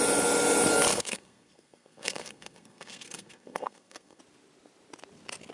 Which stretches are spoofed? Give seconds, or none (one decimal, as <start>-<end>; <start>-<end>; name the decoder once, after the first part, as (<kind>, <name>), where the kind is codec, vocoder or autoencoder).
0.9-4.2 (codec, SNAC)